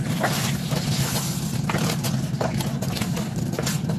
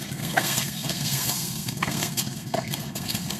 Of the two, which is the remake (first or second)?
second